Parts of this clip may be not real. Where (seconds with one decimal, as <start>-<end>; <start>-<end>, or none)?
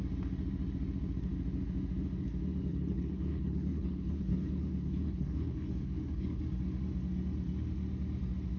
2.7-6.4